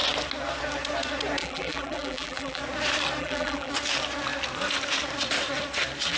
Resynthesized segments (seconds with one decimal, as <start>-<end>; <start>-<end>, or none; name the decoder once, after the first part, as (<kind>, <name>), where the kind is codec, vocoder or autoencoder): 1.4-2.6 (vocoder, BigVGAN v2); 3.2-3.7